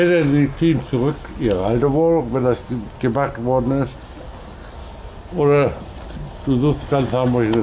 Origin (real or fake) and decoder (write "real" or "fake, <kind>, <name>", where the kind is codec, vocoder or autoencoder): real